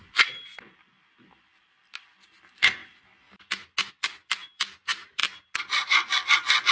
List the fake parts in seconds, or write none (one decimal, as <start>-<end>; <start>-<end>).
0.0-2.8; 3.9-5.2